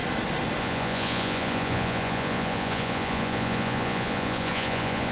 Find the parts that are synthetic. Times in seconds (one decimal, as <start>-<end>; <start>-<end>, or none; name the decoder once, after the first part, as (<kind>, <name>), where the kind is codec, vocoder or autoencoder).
0.6-5.1 (vocoder, Vocos)